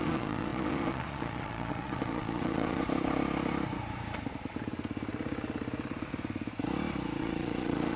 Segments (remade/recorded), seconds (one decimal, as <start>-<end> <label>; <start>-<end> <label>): 0.0-2.8 remade; 2.8-7.2 recorded; 7.2-8.0 remade